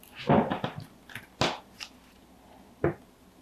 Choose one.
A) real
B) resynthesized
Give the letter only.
A